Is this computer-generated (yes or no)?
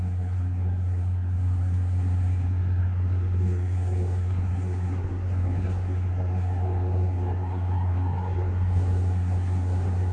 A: yes